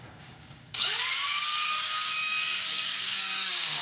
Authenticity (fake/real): fake